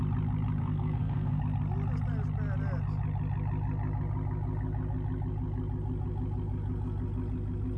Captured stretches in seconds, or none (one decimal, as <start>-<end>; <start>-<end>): 0.0-0.6; 1.4-7.8